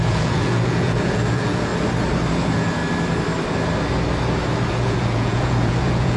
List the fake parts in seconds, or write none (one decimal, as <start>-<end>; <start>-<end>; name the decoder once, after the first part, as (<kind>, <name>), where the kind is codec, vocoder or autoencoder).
0.0-1.7 (vocoder, Vocos); 2.3-2.8; 4.7-6.2

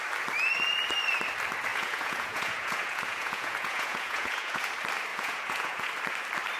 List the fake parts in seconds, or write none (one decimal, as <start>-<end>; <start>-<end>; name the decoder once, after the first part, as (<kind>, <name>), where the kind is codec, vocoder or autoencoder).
1.7-4.6 (vocoder, Vocos); 5.1-5.9

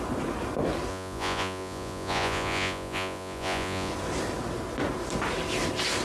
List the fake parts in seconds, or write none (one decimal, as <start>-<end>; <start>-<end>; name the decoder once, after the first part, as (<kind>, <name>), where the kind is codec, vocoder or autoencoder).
0.9-3.9 (vocoder, Vocos)

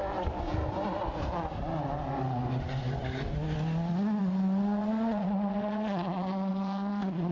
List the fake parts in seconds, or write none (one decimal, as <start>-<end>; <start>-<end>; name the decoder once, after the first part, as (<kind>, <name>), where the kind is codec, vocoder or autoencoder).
4.2-7.3 (vocoder, Vocos)

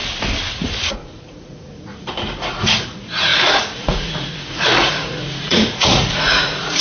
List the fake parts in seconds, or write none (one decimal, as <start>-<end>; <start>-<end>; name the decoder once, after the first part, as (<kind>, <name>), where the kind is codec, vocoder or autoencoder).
0.5-6.8 (vocoder, Vocos)

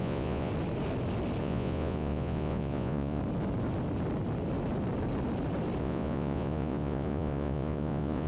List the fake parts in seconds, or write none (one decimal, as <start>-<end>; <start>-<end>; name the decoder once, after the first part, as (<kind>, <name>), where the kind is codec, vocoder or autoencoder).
0.0-0.5 (vocoder, Vocos); 1.4-3.2; 5.8-8.3

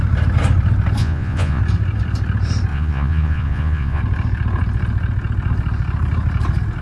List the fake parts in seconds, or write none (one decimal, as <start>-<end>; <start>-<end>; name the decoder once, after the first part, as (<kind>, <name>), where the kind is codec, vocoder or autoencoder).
1.0-1.6 (vocoder, Vocos); 2.7-4.0